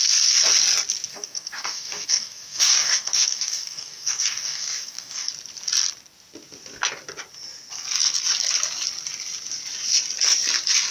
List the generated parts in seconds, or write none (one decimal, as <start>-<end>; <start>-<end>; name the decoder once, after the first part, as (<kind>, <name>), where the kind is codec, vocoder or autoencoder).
1.1-5.3 (codec, DAC)